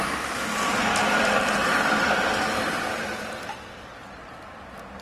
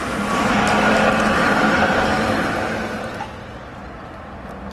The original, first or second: second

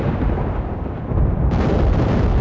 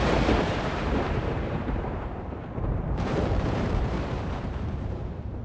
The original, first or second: first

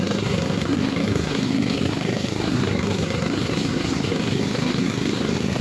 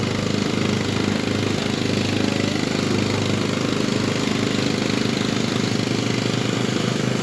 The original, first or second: second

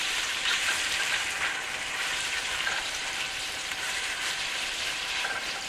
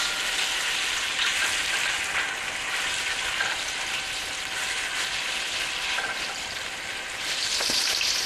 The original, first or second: second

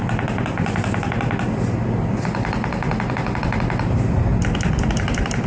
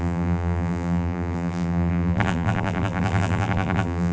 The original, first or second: first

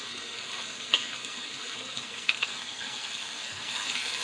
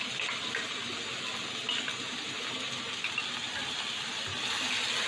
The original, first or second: second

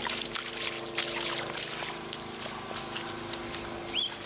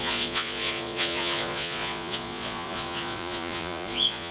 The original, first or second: first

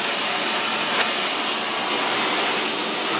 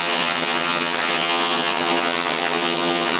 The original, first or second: first